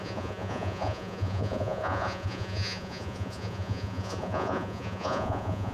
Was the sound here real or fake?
fake